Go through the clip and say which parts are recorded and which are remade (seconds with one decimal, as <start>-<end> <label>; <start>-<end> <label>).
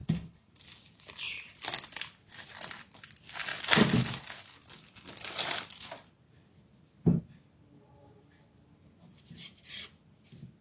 0.0-0.5 remade; 0.5-10.6 recorded